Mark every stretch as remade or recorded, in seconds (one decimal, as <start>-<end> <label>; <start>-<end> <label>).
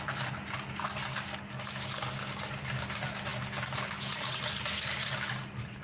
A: 0.0-5.8 recorded